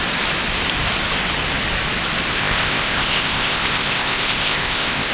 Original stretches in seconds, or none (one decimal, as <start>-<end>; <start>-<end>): 0.0-2.3